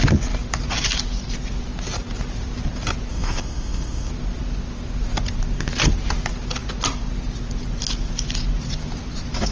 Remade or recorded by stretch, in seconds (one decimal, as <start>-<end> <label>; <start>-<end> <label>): 0.0-3.1 recorded; 3.1-4.1 remade; 4.1-9.5 recorded